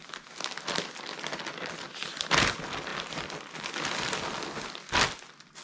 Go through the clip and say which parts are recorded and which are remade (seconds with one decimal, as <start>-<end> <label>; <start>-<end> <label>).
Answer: 0.0-5.6 recorded